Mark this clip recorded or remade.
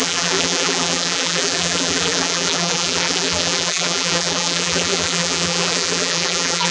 remade